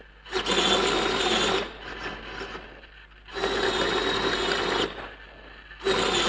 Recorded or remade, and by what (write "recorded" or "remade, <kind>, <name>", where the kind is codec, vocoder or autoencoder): recorded